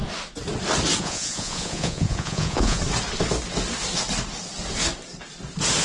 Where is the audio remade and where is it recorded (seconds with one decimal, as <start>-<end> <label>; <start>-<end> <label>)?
0.0-1.0 recorded; 1.0-2.8 remade; 2.8-5.8 recorded